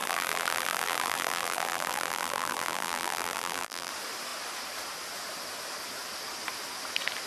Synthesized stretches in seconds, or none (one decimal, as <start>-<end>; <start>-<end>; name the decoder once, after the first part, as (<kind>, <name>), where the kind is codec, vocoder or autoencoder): 0.0-3.9 (vocoder, BigVGAN v2)